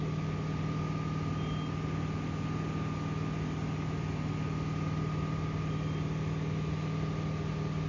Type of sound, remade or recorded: recorded